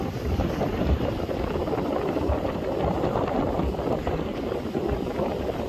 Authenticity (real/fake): fake